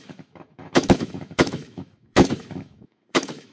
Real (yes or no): no